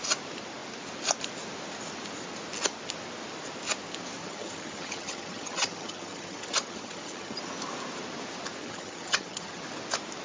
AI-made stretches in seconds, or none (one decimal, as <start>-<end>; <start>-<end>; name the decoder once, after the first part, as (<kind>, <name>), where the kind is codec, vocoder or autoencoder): 4.2-7.4 (vocoder, HiFi-GAN); 8.6-9.6